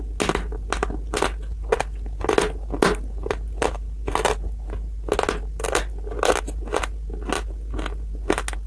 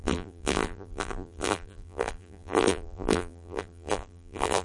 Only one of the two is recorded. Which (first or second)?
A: first